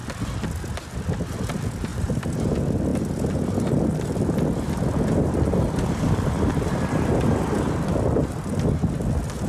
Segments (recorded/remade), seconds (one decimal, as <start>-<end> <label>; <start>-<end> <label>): 0.0-1.9 recorded; 1.9-2.5 remade; 2.5-8.2 recorded; 8.2-8.7 remade; 8.7-9.5 recorded